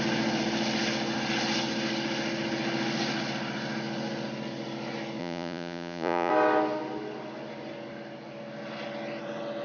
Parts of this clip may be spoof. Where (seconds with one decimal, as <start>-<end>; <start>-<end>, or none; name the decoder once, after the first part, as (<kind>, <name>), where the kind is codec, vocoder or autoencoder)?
5.2-6.3 (vocoder, Vocos)